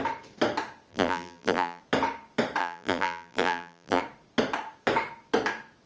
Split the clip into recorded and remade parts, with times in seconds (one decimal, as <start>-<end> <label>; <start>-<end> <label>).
0.0-0.9 recorded; 0.9-1.8 remade; 1.8-2.6 recorded; 2.6-4.0 remade; 4.0-5.9 recorded